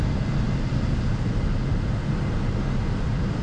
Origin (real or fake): real